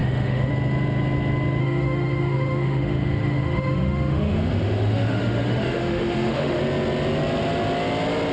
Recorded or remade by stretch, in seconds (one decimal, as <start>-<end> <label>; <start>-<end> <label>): 0.0-0.5 remade; 0.5-1.6 recorded; 1.6-6.6 remade; 6.6-8.3 recorded